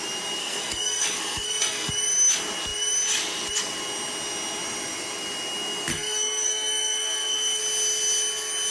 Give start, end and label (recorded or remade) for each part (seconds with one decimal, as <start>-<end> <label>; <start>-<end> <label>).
0.0-0.4 recorded; 0.4-1.9 remade; 1.9-5.9 recorded; 5.9-7.6 remade; 7.6-8.7 recorded